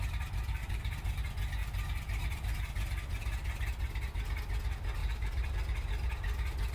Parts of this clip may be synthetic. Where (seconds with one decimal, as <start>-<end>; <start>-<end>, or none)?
0.6-1.1; 1.6-2.6; 5.0-5.5